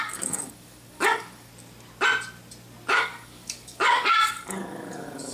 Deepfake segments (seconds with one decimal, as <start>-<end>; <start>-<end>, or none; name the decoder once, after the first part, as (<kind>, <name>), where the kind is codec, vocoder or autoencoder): 0.0-1.5 (codec, DAC); 2.9-5.3